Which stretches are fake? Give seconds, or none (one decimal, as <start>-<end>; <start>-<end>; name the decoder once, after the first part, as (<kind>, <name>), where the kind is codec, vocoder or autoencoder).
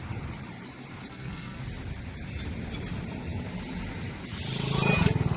1.1-1.6 (codec, SNAC)